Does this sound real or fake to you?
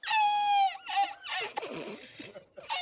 real